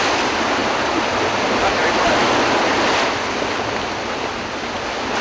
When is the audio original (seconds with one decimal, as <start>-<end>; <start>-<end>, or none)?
0.0-5.2